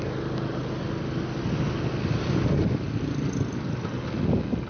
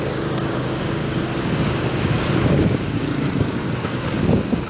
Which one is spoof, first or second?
second